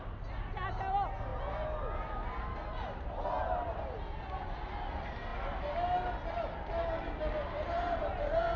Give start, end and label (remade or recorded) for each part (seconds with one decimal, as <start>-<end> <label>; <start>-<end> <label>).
0.0-7.4 recorded; 7.4-8.0 remade; 8.0-8.6 recorded